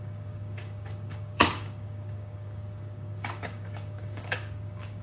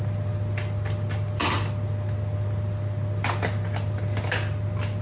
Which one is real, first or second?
second